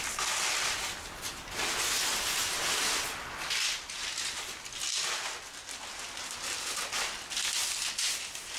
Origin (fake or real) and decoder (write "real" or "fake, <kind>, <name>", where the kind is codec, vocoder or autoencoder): real